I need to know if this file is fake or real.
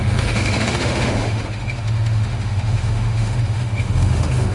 fake